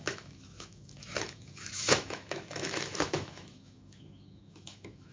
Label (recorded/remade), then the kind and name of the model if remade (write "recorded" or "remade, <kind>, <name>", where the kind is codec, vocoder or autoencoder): remade, autoencoder, DAC-VAE